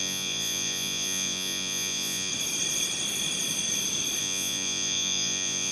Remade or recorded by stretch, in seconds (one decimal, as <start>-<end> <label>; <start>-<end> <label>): 0.0-2.3 remade; 2.3-4.2 recorded; 4.2-5.7 remade